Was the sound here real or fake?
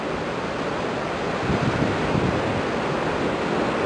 real